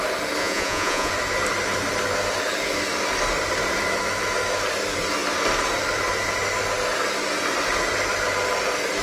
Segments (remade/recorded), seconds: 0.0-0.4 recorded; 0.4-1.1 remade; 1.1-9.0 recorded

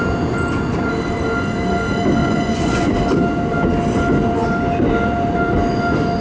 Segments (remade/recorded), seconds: 0.0-2.2 recorded; 2.2-2.9 remade; 2.9-6.2 recorded

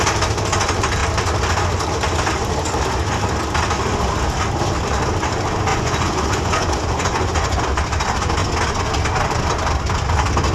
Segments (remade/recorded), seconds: 0.0-5.7 recorded; 5.7-7.6 remade; 7.6-10.5 recorded

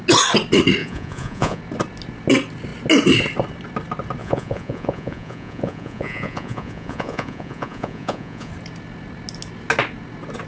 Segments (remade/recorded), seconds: 0.0-0.8 recorded; 0.8-1.6 remade; 1.6-4.2 recorded; 4.2-8.5 remade; 8.5-10.5 recorded

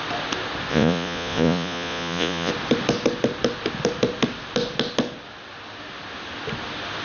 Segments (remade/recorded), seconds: 0.0-0.7 recorded; 0.7-2.5 remade; 2.5-7.0 recorded

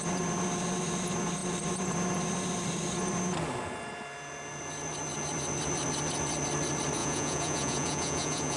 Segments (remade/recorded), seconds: 0.0-7.0 recorded; 7.0-8.6 remade

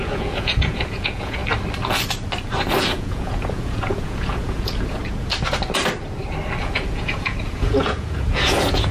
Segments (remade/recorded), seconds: 0.0-1.4 remade; 1.4-2.8 recorded; 2.8-5.0 remade; 5.0-6.6 recorded; 6.6-8.9 remade

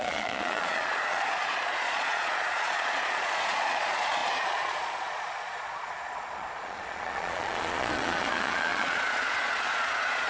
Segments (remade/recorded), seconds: 0.0-10.3 remade